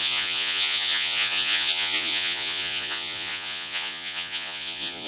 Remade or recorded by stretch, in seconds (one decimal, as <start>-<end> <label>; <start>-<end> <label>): 0.0-5.1 remade